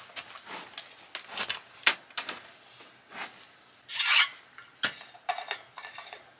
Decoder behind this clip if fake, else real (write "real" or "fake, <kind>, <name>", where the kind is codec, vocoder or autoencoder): real